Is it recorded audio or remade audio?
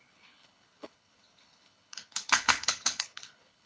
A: remade